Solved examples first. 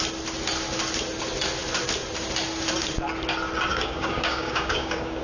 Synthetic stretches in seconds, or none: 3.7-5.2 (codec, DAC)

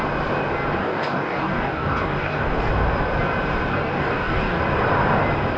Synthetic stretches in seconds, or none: 0.8-2.7 (codec, DAC); 3.7-4.6

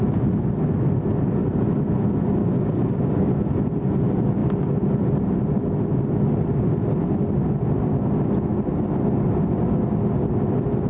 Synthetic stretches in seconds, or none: 2.4-3.3 (codec, DAC)

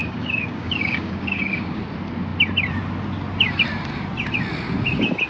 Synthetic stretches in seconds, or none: 0.0-1.8 (codec, DAC)